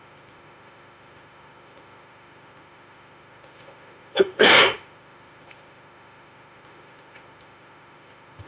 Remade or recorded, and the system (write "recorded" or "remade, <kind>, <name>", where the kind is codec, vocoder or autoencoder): remade, autoencoder, DAC-VAE